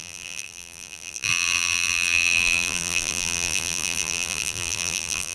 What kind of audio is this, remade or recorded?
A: remade